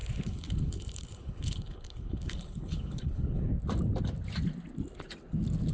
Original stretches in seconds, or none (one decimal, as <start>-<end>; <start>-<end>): 3.5-5.7